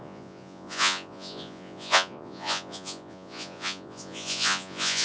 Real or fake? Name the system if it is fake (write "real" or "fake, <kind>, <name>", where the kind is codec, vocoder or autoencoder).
fake, vocoder, Vocos